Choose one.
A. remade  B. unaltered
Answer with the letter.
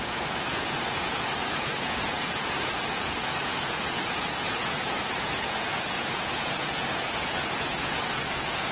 A